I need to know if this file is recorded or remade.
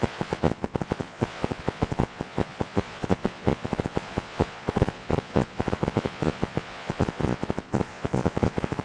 remade